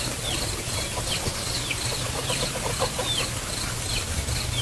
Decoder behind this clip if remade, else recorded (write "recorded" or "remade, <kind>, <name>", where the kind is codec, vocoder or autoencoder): recorded